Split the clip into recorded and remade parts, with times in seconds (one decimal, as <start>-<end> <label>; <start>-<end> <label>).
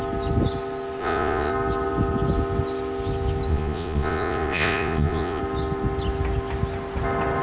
0.0-1.0 recorded; 1.0-1.5 remade; 1.5-3.5 recorded; 3.5-5.4 remade; 5.4-7.4 recorded